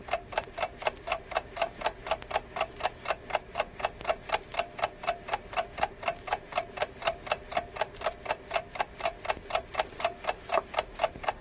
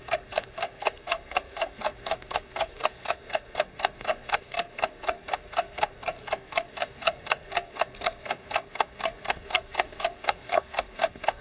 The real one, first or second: first